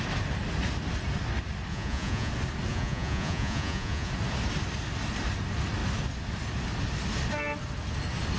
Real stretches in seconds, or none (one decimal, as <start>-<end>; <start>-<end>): 0.0-1.7; 2.3-2.7; 4.1-8.4